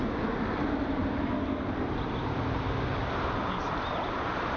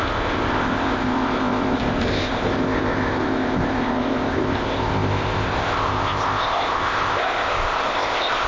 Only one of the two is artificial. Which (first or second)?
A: second